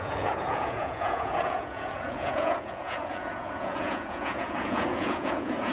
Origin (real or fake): fake